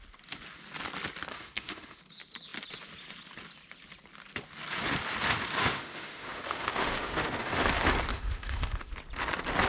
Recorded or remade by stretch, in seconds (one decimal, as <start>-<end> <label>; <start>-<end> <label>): 0.0-1.3 recorded; 1.3-2.0 remade; 2.0-5.6 recorded; 5.6-7.6 remade; 7.6-8.1 recorded; 8.1-8.9 remade; 8.9-9.7 recorded

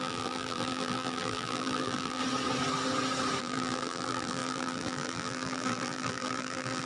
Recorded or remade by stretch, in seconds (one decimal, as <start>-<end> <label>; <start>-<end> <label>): 0.0-2.2 remade; 2.2-3.4 recorded; 3.4-6.9 remade

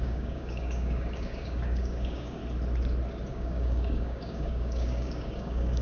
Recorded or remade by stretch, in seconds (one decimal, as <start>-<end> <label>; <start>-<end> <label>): 0.0-2.4 remade; 2.4-3.3 recorded; 3.3-5.8 remade

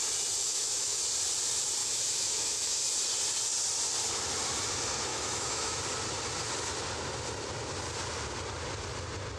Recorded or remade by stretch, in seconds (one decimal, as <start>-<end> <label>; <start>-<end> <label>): 0.0-0.4 recorded; 0.4-1.0 remade; 1.0-1.8 recorded; 1.8-2.8 remade; 2.8-5.1 recorded; 5.1-5.8 remade; 5.8-9.4 recorded